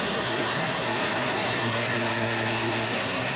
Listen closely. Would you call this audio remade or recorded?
remade